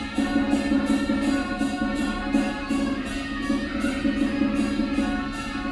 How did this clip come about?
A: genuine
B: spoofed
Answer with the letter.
A